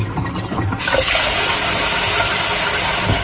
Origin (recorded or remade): recorded